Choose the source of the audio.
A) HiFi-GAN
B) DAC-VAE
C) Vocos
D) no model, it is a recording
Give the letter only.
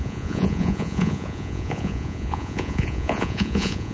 C